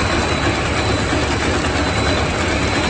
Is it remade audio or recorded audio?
recorded